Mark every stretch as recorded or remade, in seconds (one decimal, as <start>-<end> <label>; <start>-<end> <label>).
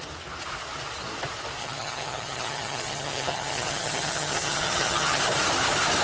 0.0-1.6 recorded; 1.6-5.2 remade; 5.2-6.0 recorded